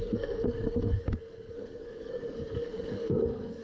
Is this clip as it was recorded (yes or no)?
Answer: no